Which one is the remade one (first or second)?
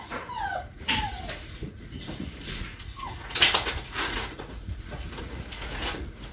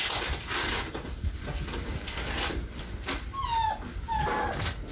first